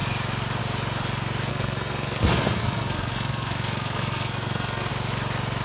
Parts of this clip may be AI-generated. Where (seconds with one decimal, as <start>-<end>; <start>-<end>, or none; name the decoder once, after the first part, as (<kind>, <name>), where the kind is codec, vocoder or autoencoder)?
1.5-4.9 (codec, SNAC)